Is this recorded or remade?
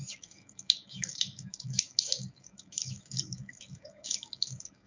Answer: remade